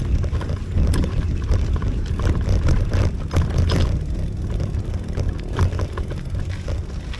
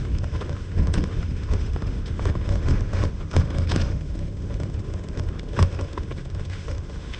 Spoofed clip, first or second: second